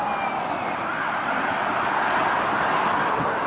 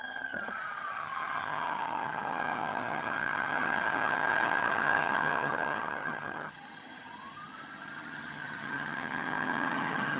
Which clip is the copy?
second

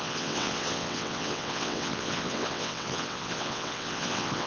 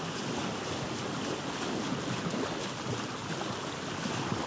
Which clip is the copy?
first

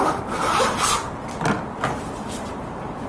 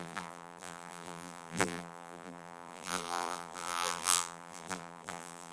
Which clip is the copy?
second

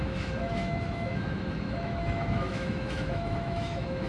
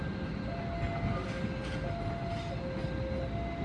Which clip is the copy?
first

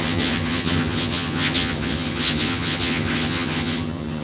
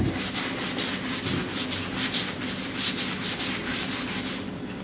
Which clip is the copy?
first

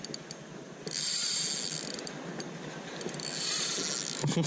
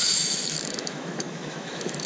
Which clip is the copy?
second